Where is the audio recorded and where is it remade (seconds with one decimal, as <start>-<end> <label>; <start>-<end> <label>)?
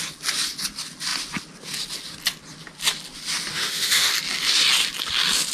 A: 0.0-3.5 recorded; 3.5-4.1 remade; 4.1-5.5 recorded